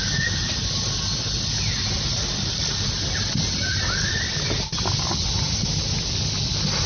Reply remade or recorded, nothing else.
recorded